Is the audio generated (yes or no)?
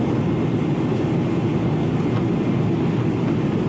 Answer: no